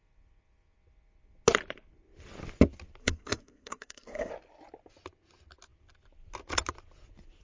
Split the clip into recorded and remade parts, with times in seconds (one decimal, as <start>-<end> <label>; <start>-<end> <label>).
0.0-3.0 recorded; 3.0-4.3 remade; 4.3-7.4 recorded